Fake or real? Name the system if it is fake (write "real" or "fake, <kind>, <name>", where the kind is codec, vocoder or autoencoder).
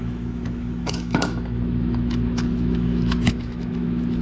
fake, autoencoder, DAC-VAE